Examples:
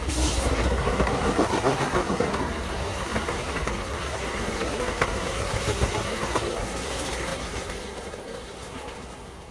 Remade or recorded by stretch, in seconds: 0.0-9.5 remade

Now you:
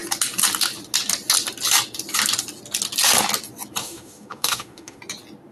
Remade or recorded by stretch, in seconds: 0.0-3.8 recorded; 3.8-5.0 remade; 5.0-5.5 recorded

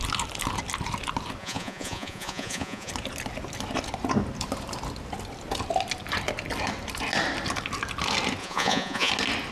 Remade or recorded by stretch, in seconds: 0.0-1.4 recorded; 1.4-2.9 remade; 2.9-8.4 recorded; 8.4-9.1 remade; 9.1-9.5 recorded

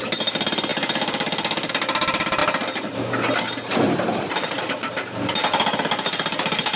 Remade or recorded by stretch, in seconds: 0.0-6.8 recorded

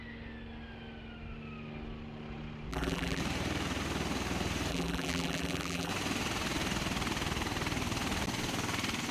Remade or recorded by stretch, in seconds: 0.0-2.7 recorded; 2.7-3.2 remade; 3.2-4.7 recorded; 4.7-5.9 remade; 5.9-9.1 recorded

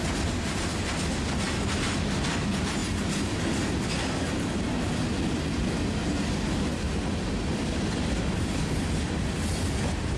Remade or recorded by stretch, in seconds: 0.0-10.2 recorded

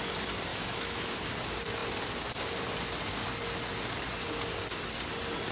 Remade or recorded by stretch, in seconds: 0.0-0.5 recorded; 0.5-1.2 remade; 1.2-5.5 recorded